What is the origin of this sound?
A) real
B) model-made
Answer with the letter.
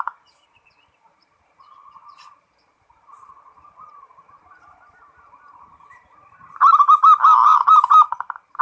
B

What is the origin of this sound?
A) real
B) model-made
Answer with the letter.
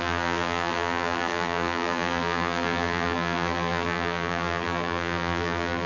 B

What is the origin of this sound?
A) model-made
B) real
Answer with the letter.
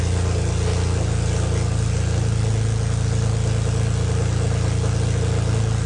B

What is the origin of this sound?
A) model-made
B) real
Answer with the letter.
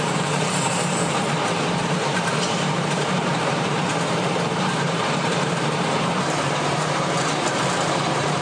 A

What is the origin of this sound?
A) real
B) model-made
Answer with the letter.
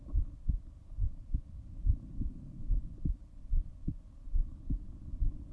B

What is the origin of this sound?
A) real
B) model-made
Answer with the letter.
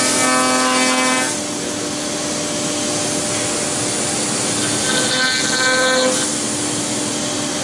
A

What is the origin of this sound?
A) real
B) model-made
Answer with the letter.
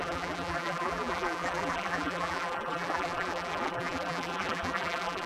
B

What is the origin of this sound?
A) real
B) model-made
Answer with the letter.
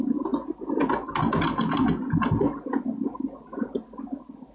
A